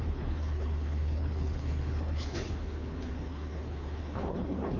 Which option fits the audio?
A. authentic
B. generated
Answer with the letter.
B